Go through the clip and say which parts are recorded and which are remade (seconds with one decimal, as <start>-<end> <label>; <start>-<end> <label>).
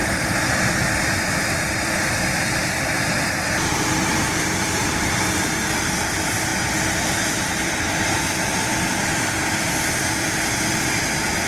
0.0-5.2 remade; 5.2-11.5 recorded